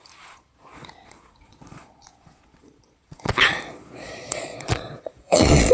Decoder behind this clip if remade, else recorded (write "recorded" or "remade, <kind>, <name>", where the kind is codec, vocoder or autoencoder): remade, vocoder, Vocos